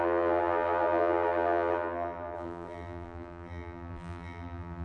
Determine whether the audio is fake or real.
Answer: fake